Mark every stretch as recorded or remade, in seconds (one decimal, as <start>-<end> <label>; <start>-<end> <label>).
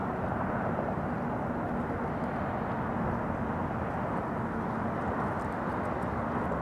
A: 0.0-0.7 remade; 0.7-6.6 recorded